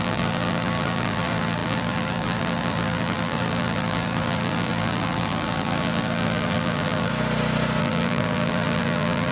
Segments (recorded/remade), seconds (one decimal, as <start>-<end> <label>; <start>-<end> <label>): 0.0-7.1 remade; 7.1-7.8 recorded; 7.8-9.3 remade